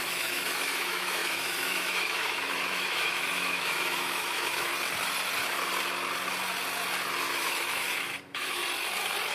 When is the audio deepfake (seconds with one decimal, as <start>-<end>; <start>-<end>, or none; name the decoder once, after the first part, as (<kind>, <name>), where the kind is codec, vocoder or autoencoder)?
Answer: 0.0-4.7 (autoencoder, DAC-VAE); 7.2-8.6